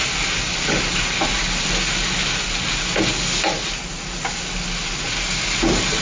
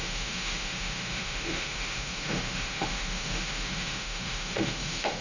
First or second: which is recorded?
first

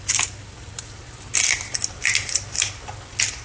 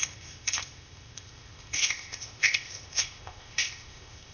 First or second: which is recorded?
first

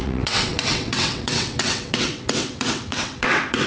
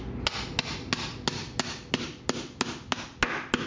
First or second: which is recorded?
second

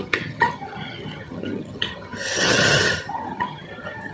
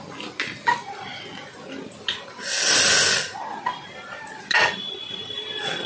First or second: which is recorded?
second